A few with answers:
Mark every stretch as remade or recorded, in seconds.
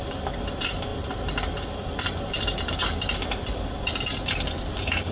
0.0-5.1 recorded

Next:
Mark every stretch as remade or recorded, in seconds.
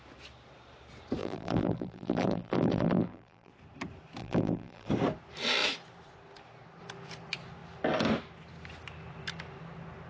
0.0-1.2 recorded; 1.2-3.5 remade; 3.5-4.2 recorded; 4.2-4.9 remade; 4.9-10.1 recorded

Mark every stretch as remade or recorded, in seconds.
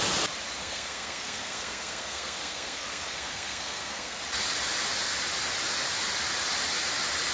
0.0-0.6 recorded; 0.6-4.2 remade; 4.2-7.3 recorded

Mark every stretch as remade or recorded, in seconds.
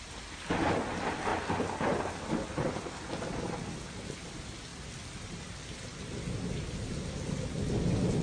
0.0-8.2 recorded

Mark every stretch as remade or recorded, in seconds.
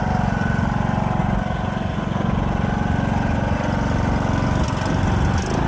0.0-5.7 recorded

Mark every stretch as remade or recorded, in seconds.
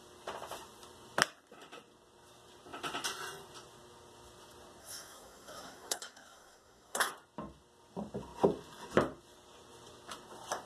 0.0-4.8 recorded; 4.8-7.1 remade; 7.1-10.7 recorded